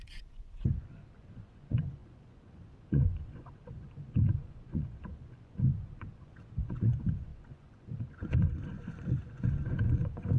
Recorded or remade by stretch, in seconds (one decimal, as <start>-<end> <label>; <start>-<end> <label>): 0.0-10.4 remade